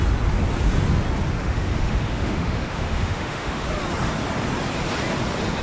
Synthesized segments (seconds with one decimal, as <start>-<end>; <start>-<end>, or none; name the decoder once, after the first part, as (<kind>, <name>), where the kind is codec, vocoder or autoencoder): 1.4-3.7 (autoencoder, DAC-VAE)